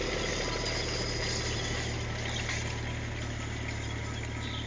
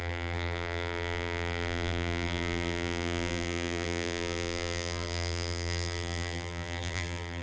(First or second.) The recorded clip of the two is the first